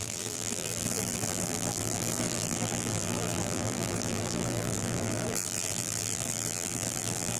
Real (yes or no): no